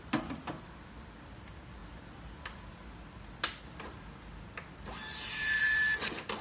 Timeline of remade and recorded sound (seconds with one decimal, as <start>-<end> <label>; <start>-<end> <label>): 0.0-6.4 recorded